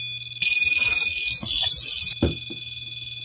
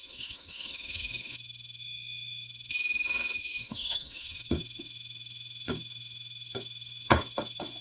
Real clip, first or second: first